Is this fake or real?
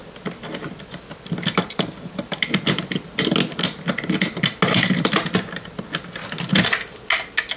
real